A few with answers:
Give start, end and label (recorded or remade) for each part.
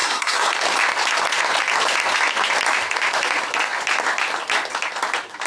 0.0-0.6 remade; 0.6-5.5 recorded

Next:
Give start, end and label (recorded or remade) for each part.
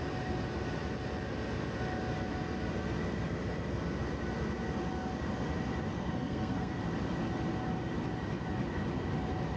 0.0-5.9 recorded; 5.9-6.8 remade; 6.8-9.6 recorded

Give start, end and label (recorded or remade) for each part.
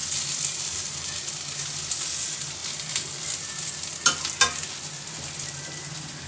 0.0-6.3 recorded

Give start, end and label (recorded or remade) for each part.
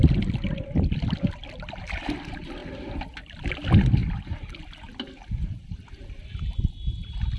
0.0-7.4 recorded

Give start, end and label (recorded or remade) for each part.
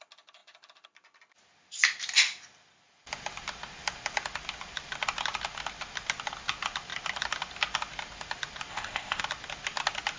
0.0-8.7 recorded; 8.7-9.2 remade; 9.2-10.2 recorded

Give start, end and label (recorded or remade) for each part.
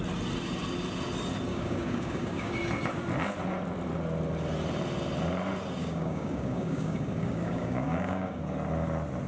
0.0-1.5 recorded; 1.5-2.5 remade; 2.5-5.8 recorded; 5.8-8.4 remade; 8.4-9.3 recorded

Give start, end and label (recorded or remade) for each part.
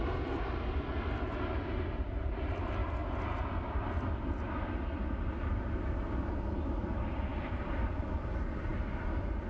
0.0-7.3 recorded; 7.3-8.0 remade; 8.0-9.5 recorded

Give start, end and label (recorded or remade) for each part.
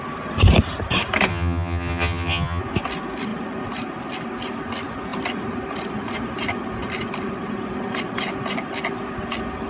0.0-1.3 recorded; 1.3-2.6 remade; 2.6-9.7 recorded